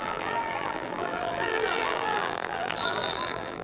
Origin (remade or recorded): remade